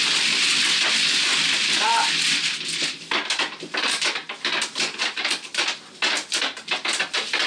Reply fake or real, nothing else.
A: real